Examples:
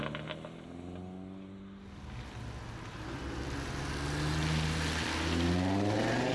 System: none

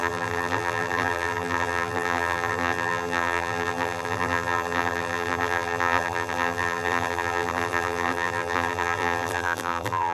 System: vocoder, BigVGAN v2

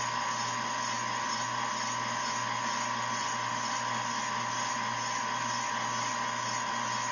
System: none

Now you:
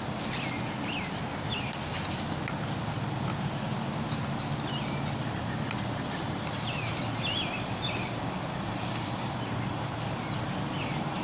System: none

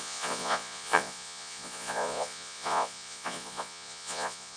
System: vocoder, Vocos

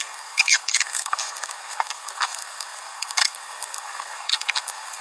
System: codec, SNAC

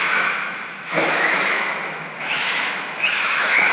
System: autoencoder, DAC-VAE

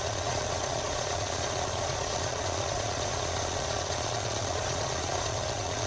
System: vocoder, Vocos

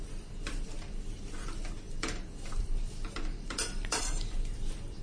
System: vocoder, BigVGAN v2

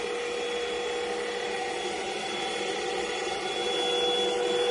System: none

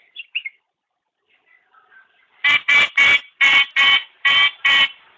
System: vocoder, BigVGAN v2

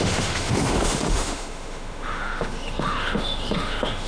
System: autoencoder, DAC-VAE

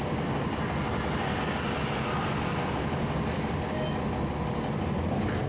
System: none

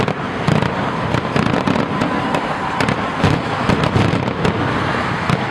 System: none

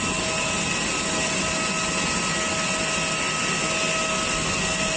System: none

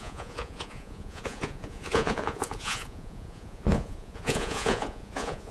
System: vocoder, Vocos